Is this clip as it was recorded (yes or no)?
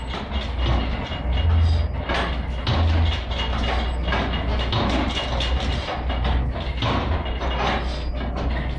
yes